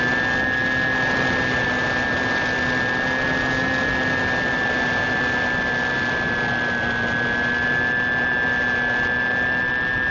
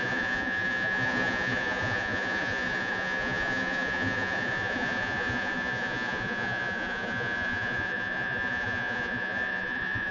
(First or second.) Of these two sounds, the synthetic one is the second